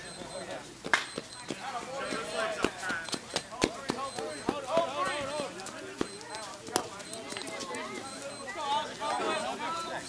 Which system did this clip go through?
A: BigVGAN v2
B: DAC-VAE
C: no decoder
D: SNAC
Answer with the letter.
C